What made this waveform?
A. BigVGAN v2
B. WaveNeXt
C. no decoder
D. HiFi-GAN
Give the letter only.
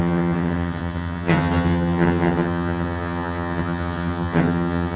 D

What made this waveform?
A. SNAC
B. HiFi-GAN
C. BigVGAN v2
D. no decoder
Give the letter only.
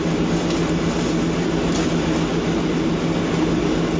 D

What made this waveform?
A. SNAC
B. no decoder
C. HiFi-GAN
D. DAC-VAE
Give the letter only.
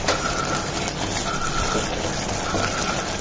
B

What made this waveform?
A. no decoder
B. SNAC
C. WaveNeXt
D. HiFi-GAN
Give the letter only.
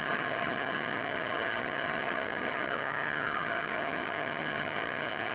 D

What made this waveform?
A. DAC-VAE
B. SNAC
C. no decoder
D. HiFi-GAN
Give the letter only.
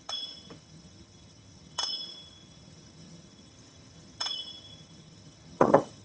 D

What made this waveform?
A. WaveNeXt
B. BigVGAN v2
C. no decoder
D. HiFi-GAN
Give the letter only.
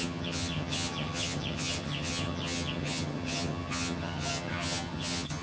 D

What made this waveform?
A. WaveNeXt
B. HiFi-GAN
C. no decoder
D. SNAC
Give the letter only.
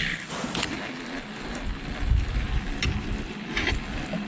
C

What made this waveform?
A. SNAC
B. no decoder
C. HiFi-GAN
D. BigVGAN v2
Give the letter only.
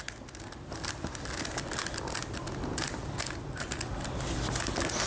B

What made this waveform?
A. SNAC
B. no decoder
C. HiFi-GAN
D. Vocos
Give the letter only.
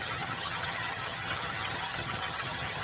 C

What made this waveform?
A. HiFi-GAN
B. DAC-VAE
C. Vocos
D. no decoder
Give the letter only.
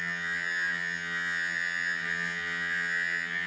A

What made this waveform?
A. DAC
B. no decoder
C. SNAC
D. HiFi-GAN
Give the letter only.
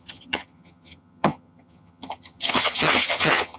D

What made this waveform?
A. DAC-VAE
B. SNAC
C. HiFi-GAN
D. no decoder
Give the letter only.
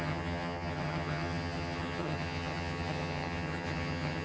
C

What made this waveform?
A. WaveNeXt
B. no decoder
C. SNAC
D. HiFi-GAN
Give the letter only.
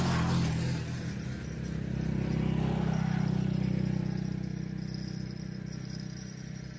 B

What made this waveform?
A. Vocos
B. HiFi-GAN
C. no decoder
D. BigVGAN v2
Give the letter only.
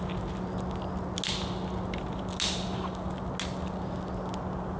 C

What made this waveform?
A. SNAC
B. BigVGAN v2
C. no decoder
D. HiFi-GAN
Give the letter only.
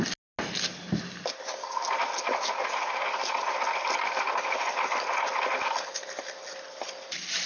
C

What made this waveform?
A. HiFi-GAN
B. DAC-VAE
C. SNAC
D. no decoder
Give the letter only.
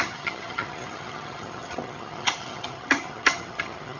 A